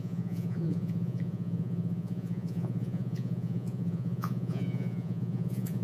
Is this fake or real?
fake